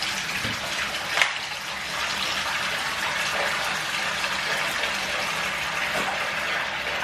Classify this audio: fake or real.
real